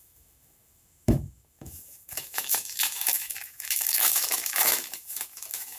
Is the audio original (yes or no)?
no